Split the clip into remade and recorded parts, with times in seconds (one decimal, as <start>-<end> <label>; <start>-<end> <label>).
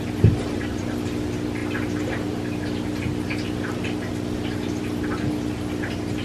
0.0-6.2 recorded